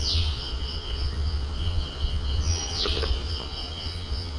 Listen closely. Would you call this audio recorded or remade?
remade